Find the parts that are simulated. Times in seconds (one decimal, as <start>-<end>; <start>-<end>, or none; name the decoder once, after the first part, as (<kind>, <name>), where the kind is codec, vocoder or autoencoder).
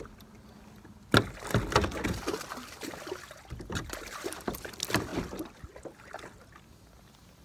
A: none